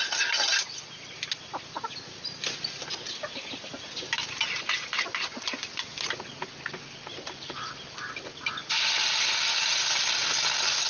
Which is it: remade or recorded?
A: recorded